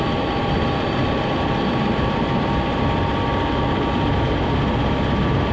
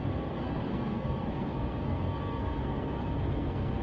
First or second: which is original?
first